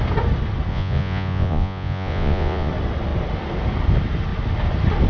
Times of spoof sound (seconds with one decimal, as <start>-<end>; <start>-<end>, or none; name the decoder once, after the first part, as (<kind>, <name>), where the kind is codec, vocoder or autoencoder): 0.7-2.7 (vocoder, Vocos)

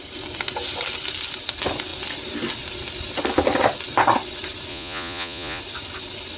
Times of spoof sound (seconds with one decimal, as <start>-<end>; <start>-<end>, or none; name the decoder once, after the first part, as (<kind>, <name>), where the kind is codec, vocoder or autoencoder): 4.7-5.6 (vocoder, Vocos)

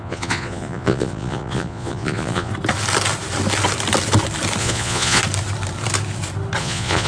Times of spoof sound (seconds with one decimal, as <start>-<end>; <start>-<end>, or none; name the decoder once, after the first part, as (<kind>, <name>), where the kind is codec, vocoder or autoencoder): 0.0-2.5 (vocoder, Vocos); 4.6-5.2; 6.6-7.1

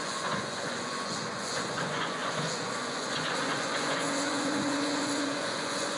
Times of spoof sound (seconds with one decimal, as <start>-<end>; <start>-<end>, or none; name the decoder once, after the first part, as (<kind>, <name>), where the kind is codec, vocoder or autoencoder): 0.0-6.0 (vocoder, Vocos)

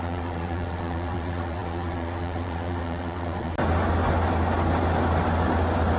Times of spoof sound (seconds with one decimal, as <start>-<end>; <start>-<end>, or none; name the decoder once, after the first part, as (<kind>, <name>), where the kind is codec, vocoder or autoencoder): 0.0-3.5 (vocoder, Vocos)

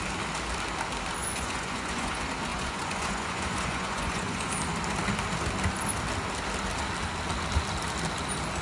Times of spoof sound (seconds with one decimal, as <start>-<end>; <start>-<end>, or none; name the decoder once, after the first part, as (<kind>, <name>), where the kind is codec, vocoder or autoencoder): 1.2-2.1 (vocoder, Vocos); 2.5-4.5